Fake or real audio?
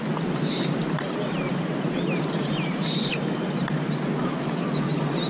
real